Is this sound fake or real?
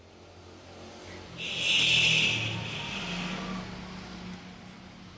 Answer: real